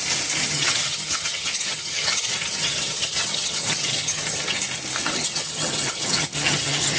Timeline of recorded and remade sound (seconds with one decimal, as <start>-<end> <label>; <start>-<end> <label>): 0.0-0.4 recorded; 0.4-4.6 remade; 4.6-5.0 recorded; 5.0-7.0 remade